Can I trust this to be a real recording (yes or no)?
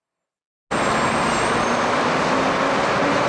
yes